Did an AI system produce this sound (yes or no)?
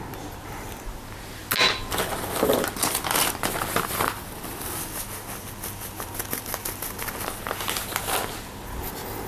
no